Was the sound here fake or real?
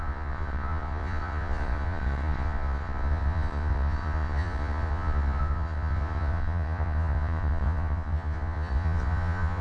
fake